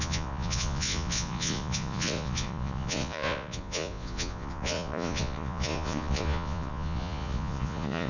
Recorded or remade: remade